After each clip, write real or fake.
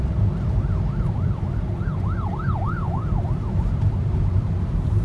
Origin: real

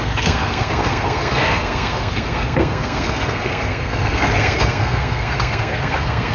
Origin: fake